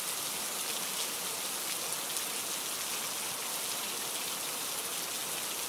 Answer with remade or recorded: recorded